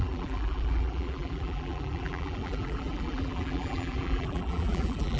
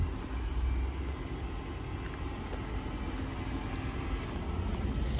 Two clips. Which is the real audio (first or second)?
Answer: second